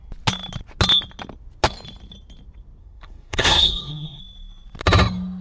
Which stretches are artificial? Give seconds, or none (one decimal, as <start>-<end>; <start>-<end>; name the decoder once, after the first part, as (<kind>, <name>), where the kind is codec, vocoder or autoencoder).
2.8-4.2 (codec, SNAC)